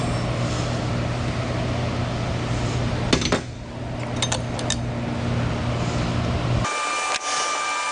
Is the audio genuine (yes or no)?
yes